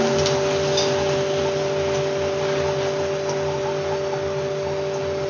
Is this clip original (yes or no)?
yes